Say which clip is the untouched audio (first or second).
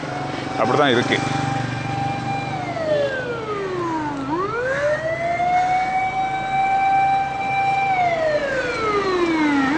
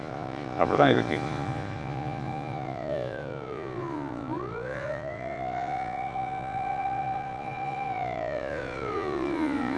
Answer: first